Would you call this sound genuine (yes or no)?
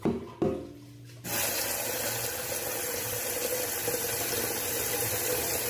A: yes